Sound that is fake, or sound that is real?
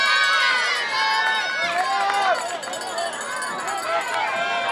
real